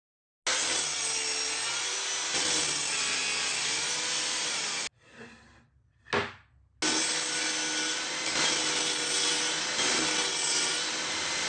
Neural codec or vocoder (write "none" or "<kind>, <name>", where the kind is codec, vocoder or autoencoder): none